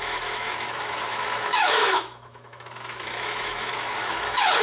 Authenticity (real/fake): fake